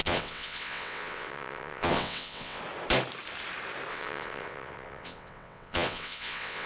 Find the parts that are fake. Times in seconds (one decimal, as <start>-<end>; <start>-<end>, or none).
0.0-2.6; 3.9-6.7